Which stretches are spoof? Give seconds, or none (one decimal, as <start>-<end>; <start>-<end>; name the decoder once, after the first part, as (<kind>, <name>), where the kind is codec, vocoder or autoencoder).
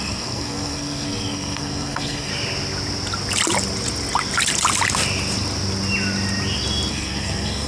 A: 0.0-2.3 (codec, SNAC); 6.9-7.7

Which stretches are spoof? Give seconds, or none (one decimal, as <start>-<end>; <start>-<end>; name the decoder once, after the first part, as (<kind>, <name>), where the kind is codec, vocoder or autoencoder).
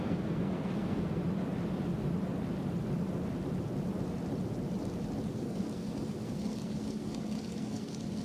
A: 0.0-1.2 (codec, SNAC); 5.3-8.2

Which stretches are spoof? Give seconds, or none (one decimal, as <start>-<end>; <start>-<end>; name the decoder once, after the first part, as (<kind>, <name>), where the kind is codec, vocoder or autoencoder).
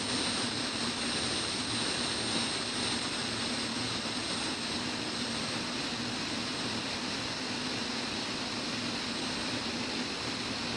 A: none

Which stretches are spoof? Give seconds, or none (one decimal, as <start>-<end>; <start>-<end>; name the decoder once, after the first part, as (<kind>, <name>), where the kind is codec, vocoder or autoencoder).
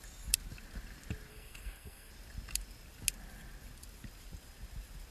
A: 1.3-2.1 (codec, SNAC)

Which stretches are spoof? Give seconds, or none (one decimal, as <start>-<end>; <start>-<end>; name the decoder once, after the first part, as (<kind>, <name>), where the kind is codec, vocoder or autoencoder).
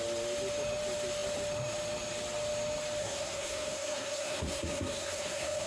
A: 3.0-5.7 (codec, SNAC)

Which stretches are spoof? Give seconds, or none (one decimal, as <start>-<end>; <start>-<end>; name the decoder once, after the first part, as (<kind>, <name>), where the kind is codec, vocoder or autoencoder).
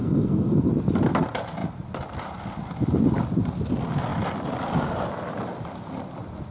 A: 0.0-0.7 (codec, SNAC)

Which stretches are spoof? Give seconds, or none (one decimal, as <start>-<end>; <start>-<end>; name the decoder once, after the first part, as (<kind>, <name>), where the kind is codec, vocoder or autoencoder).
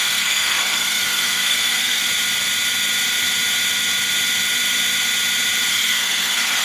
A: 0.0-2.0 (codec, SNAC); 5.7-6.6